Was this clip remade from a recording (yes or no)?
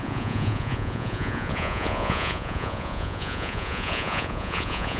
yes